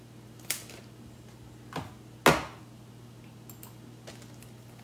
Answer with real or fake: real